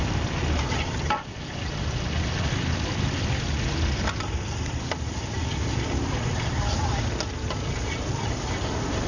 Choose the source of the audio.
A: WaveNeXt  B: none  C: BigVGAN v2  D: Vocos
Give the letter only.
B